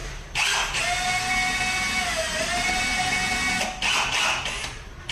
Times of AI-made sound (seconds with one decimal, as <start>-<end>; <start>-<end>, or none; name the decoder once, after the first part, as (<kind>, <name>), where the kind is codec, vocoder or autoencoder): none